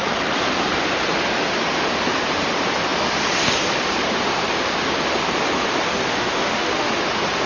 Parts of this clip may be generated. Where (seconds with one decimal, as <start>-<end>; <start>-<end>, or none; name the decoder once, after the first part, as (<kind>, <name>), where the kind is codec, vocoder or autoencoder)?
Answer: 6.1-6.9 (autoencoder, DAC-VAE)